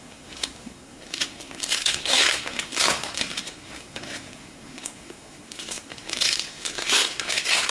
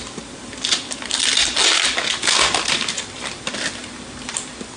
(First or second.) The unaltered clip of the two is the second